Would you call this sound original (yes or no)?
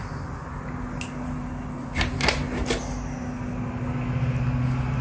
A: yes